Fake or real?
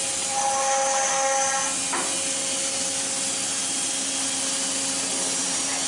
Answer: real